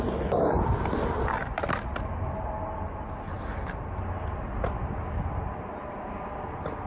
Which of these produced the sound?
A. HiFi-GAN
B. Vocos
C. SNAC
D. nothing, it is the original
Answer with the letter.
D